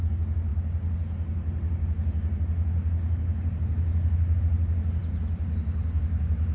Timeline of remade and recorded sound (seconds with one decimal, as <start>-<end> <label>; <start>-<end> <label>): 0.0-6.5 recorded